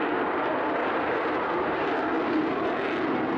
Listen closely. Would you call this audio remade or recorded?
recorded